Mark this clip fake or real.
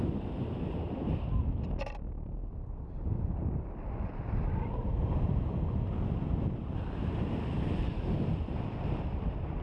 fake